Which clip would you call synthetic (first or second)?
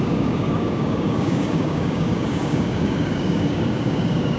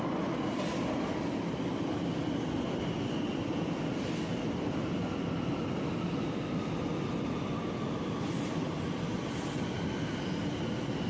first